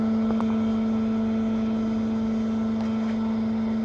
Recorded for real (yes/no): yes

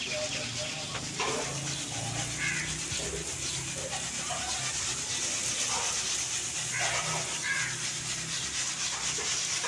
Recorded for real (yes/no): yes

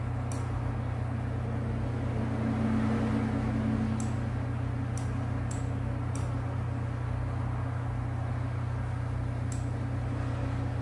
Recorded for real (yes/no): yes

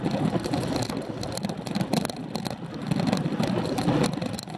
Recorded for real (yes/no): yes